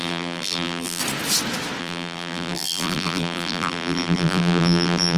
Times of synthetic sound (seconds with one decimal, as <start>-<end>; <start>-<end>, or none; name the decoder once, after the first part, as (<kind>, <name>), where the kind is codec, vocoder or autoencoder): 0.0-1.0 (vocoder, BigVGAN v2); 1.8-5.2